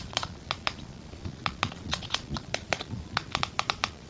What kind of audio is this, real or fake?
fake